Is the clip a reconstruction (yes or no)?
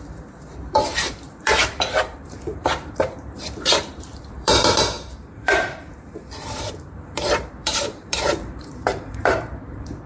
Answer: yes